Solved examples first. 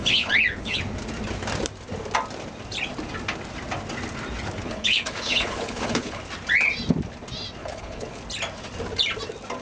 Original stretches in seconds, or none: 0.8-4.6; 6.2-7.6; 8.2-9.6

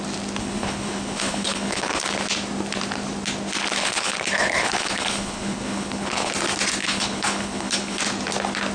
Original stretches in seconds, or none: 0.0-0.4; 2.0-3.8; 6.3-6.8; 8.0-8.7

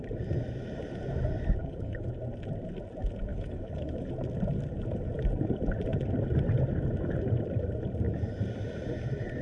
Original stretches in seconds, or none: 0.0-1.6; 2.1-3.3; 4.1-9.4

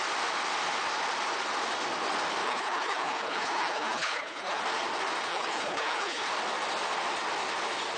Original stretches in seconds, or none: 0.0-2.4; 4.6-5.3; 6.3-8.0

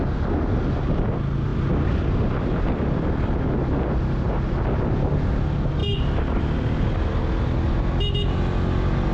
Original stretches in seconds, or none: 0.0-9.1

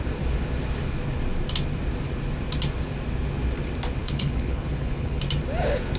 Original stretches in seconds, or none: 0.0-4.0; 5.2-6.0